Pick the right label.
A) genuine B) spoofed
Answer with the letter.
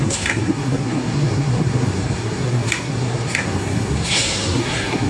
B